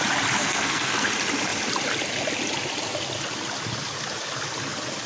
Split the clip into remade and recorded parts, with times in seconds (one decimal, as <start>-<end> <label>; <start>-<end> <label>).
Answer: 0.0-0.4 recorded; 0.4-1.1 remade; 1.1-5.1 recorded